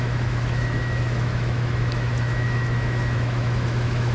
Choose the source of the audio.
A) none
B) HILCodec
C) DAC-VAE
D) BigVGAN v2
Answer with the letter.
C